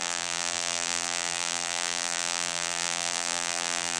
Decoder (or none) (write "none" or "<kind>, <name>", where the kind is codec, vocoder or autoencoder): vocoder, BigVGAN v2